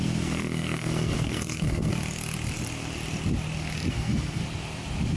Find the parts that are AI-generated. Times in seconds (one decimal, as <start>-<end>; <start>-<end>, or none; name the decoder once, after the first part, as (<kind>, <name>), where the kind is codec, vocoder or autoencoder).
0.0-2.0 (codec, SNAC); 3.9-4.4